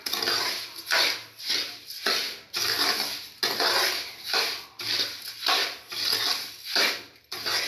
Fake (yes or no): no